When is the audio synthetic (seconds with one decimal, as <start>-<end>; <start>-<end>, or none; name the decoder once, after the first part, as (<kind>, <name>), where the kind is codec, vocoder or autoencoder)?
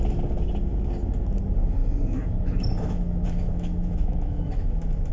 1.8-5.1 (autoencoder, DAC-VAE)